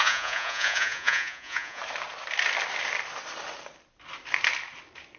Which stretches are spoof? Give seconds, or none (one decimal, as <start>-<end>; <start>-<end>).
0.0-1.8